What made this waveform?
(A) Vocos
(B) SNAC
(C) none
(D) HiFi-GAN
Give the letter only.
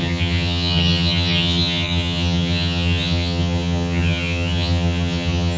D